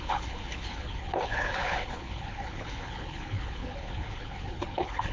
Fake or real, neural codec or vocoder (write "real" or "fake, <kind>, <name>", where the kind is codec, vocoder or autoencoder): fake, codec, HILCodec